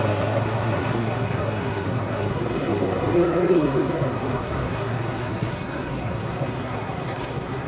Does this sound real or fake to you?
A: fake